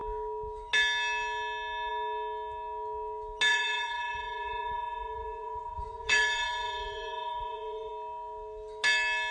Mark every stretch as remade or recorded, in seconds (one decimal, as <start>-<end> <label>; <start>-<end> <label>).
0.0-3.5 recorded; 3.5-7.9 remade; 7.9-9.3 recorded